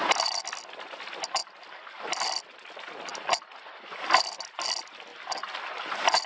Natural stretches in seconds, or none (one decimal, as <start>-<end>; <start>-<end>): 0.0-6.3